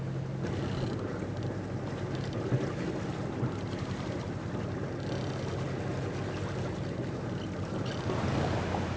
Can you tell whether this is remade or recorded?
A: recorded